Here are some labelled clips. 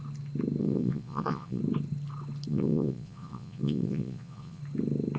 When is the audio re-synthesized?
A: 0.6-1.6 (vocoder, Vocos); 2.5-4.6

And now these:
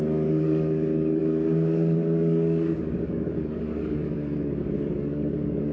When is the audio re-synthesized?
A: 0.0-5.7 (codec, DAC)

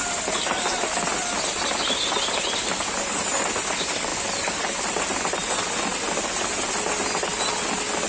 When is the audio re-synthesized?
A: none

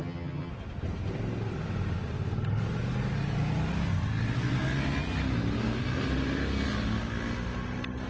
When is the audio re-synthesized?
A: 0.0-0.5 (vocoder, HiFi-GAN)